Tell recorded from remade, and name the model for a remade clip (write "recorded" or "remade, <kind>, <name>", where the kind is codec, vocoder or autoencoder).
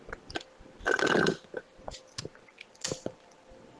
recorded